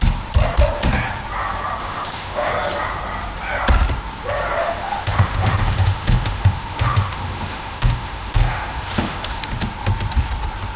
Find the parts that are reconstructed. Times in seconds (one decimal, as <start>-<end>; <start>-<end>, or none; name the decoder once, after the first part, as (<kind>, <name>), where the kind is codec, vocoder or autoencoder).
1.8-2.5 (autoencoder, DAC-VAE); 4.6-9.4